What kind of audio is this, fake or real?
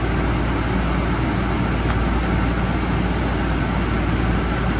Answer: real